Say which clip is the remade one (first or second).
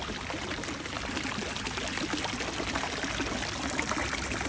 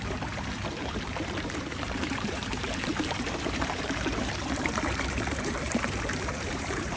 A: second